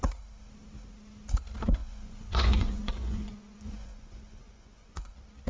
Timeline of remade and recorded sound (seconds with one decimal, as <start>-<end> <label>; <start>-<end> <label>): 0.0-1.8 recorded; 1.8-5.1 remade; 5.1-5.5 recorded